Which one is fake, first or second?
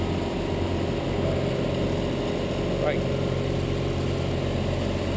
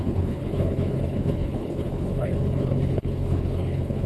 second